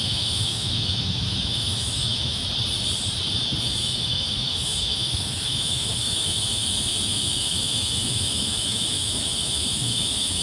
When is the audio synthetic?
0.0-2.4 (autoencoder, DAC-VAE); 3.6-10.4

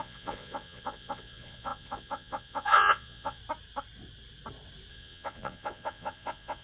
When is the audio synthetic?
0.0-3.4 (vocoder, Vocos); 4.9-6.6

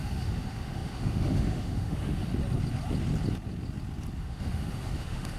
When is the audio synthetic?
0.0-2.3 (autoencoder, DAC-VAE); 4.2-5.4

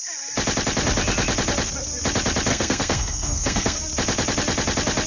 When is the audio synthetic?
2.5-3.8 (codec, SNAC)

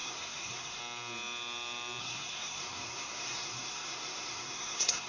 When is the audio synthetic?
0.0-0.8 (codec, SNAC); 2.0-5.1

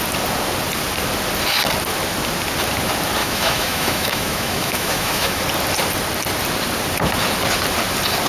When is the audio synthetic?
3.2-5.4 (autoencoder, DAC-VAE)

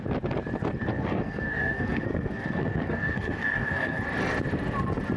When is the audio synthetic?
0.9-4.0 (codec, SNAC)